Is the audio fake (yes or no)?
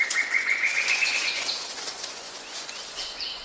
yes